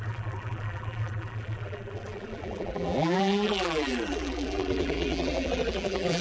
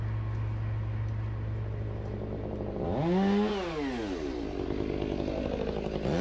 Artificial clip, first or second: first